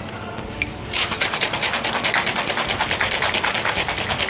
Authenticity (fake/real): fake